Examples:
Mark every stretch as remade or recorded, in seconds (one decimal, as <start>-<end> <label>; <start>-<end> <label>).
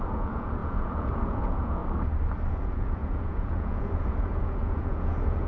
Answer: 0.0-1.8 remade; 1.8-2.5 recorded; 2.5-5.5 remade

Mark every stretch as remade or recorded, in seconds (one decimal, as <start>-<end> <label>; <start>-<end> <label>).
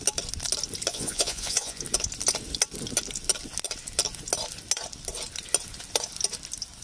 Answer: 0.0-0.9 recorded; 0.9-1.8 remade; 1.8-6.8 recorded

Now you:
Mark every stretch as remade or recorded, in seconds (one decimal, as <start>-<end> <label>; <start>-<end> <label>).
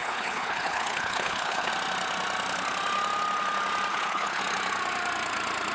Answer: 0.0-1.7 remade; 1.7-3.9 recorded; 3.9-4.4 remade; 4.4-5.7 recorded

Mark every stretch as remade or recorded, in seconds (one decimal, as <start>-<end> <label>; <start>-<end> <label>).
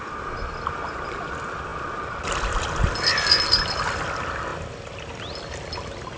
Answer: 0.0-6.2 recorded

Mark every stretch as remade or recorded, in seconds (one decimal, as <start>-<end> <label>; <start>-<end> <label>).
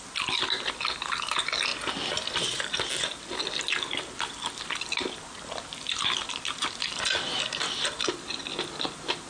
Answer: 0.0-9.3 recorded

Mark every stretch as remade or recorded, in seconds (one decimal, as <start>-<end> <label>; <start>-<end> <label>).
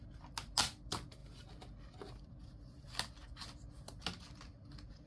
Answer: 0.0-5.1 recorded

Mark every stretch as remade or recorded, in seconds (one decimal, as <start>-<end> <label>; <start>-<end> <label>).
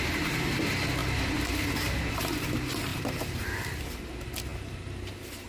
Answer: 0.0-2.9 recorded; 2.9-4.0 remade; 4.0-5.5 recorded